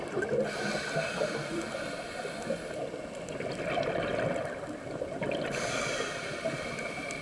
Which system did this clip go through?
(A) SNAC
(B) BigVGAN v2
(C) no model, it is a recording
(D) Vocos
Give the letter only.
C